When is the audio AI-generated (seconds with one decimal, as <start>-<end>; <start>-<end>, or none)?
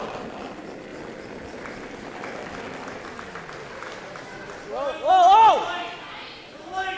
none